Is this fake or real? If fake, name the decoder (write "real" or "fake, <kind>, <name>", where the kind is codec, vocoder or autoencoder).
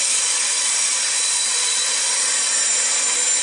real